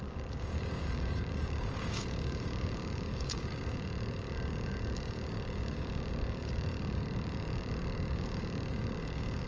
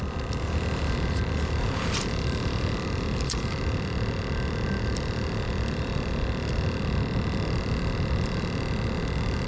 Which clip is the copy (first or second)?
first